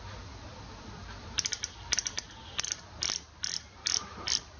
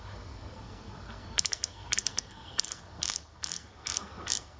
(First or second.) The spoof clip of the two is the second